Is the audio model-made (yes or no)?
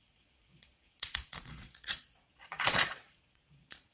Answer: yes